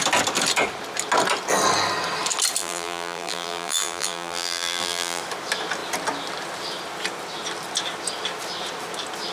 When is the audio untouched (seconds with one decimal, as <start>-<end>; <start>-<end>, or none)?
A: 0.0-2.6; 5.2-9.3